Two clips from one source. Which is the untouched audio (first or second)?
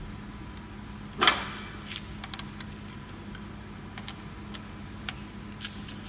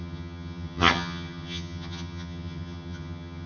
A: first